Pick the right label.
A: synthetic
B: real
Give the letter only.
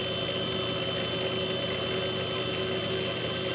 B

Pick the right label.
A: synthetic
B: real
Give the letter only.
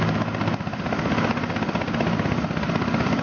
B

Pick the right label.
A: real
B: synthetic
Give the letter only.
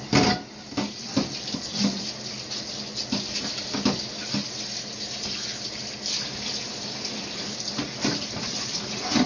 A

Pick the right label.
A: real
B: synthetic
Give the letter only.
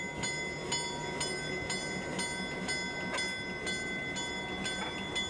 A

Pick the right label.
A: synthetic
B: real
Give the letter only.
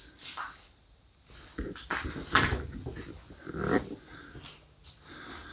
B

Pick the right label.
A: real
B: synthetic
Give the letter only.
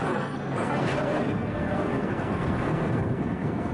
B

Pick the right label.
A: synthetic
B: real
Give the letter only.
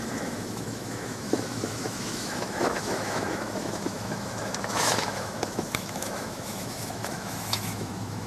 A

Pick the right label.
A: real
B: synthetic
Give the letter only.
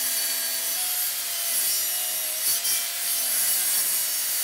A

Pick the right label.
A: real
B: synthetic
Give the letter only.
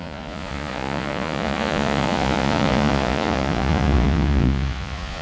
B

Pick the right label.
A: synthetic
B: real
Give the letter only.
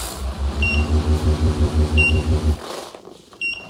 A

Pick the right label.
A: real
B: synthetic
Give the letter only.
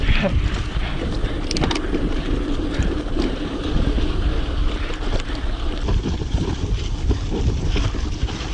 B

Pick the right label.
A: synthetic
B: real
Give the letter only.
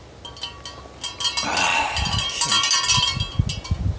B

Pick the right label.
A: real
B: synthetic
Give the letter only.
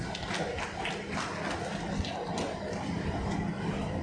A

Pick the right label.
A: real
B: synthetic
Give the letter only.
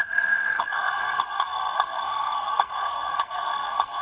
B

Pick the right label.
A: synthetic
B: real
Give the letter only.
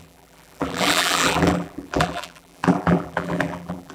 A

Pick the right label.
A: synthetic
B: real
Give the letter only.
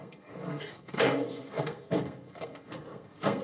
A